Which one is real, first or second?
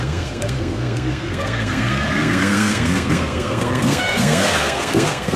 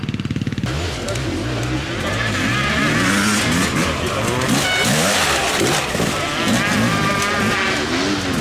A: second